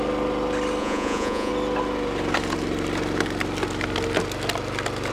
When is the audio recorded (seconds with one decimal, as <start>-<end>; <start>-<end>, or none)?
0.0-0.8; 1.5-5.1